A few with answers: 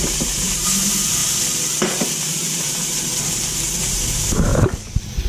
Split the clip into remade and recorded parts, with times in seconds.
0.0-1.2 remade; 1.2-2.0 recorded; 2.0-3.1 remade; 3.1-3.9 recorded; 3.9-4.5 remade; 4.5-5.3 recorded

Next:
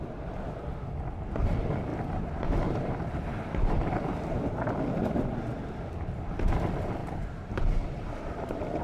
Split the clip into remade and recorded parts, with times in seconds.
0.0-1.9 recorded; 1.9-4.7 remade; 4.7-7.0 recorded; 7.0-8.8 remade

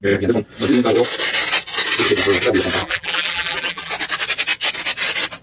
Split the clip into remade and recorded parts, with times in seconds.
0.0-2.8 recorded; 2.8-3.9 remade; 3.9-5.4 recorded